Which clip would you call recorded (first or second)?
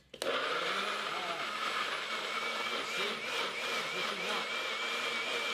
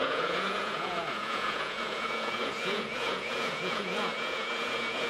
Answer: first